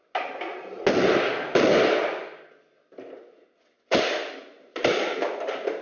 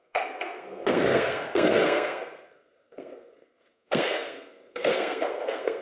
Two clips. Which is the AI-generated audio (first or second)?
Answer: second